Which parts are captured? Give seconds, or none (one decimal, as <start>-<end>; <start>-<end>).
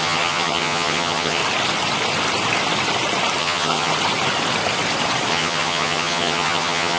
1.4-3.4; 3.9-5.3